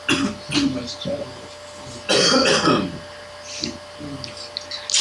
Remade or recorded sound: recorded